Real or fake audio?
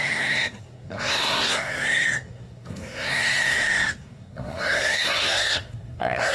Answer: fake